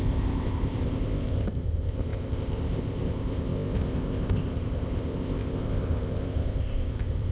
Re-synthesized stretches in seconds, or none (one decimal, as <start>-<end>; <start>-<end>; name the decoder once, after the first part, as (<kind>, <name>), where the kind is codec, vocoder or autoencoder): 0.0-7.3 (codec, ZipCodec)